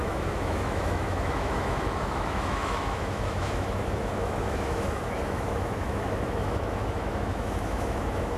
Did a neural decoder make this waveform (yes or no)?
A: yes